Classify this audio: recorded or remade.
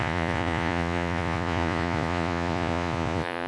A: remade